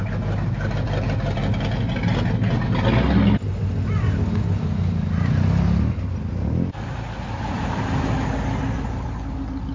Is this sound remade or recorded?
recorded